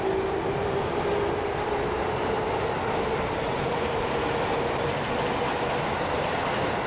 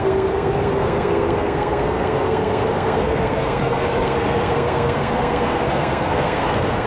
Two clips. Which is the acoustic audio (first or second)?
first